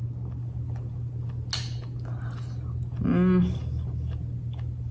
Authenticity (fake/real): real